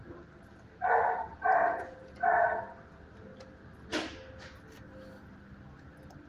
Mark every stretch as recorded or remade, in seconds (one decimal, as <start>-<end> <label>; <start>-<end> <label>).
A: 0.0-6.3 recorded